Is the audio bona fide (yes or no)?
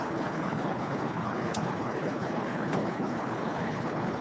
no